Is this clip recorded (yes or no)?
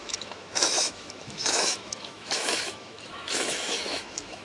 no